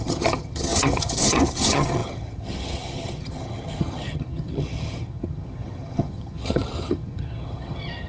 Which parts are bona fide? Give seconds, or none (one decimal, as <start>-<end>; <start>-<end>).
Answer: none